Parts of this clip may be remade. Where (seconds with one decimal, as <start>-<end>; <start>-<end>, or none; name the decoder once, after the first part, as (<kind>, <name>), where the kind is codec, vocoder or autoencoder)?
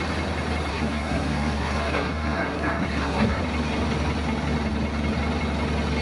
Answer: 0.7-3.4 (codec, SNAC)